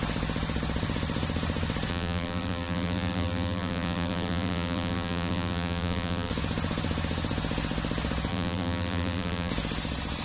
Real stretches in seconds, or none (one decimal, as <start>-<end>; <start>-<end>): 0.0-1.9; 6.3-8.3; 9.5-10.2